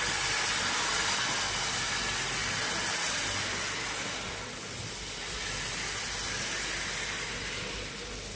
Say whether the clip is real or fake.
real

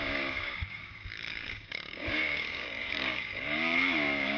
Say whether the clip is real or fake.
fake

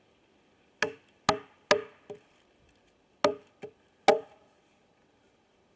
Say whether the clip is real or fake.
real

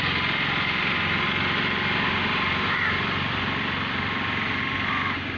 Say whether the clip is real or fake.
real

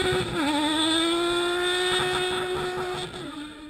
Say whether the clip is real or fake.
real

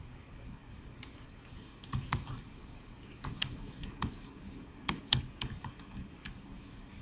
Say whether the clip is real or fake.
fake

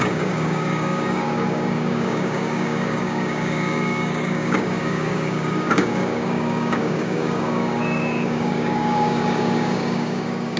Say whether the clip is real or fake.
fake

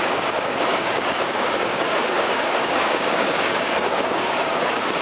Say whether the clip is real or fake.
fake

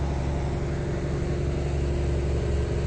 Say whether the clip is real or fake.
real